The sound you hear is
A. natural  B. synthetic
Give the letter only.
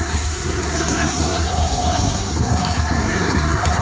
B